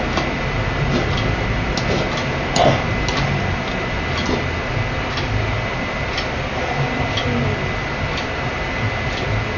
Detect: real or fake real